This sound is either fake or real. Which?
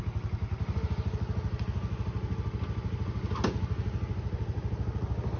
real